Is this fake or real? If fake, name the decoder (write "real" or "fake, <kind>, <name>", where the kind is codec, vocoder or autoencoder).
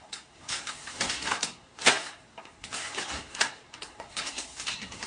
fake, codec, SNAC